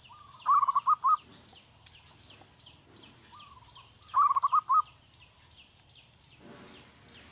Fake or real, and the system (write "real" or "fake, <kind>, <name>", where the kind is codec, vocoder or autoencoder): real